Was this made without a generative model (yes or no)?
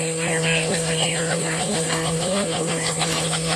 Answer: no